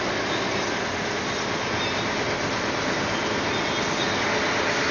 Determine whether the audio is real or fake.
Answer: real